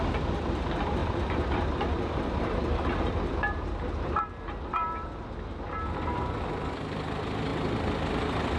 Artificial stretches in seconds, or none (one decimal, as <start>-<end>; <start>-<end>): 1.0-5.5

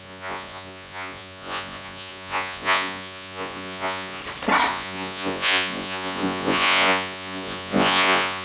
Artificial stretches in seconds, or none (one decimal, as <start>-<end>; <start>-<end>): 0.0-4.2; 4.7-8.4

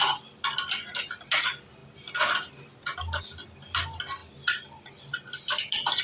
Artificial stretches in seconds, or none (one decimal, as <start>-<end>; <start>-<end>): none

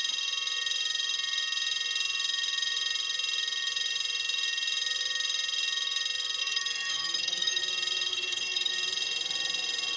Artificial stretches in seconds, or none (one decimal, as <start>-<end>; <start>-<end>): 6.4-7.6; 8.1-8.7